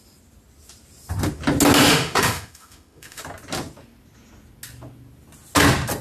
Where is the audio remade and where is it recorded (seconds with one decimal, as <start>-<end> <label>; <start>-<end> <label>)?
0.0-1.9 recorded; 1.9-3.2 remade; 3.2-6.0 recorded